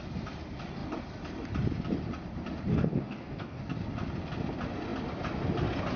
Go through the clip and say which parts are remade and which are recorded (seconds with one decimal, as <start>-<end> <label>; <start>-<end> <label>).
0.0-2.7 recorded; 2.7-3.6 remade; 3.6-6.0 recorded